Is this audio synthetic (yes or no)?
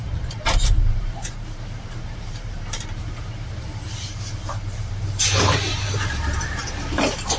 yes